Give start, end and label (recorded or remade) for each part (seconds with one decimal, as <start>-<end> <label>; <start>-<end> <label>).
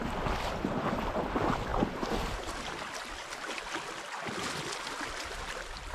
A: 0.0-5.9 recorded